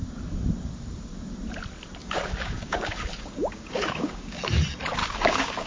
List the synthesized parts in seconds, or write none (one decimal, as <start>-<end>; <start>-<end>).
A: 2.0-4.4; 5.0-5.7